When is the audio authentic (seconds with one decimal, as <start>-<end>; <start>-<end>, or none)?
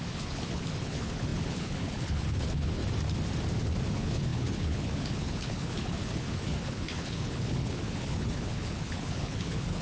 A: 2.8-3.9